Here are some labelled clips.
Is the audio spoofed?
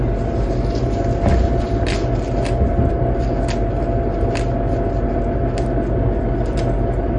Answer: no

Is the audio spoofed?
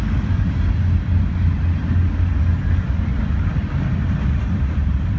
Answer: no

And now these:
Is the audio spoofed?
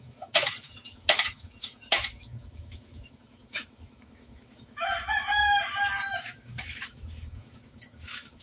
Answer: yes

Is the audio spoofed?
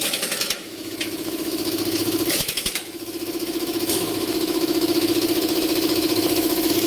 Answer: yes